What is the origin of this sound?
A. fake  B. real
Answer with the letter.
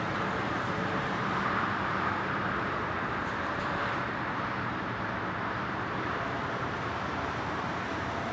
A